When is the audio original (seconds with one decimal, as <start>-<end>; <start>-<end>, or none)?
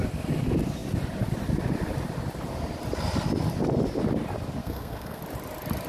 0.0-4.6; 5.2-5.9